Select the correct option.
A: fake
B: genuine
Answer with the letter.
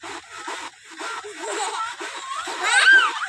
B